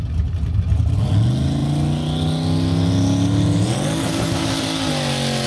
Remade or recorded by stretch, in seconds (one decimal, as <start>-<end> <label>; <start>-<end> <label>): 0.0-5.5 recorded